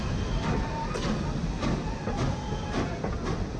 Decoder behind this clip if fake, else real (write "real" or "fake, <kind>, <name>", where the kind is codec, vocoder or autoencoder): real